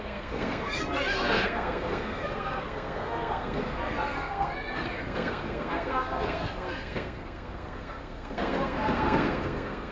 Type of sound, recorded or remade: remade